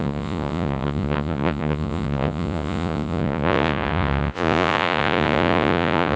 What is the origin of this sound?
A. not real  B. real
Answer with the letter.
A